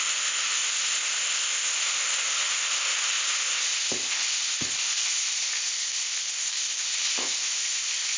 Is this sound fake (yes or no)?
yes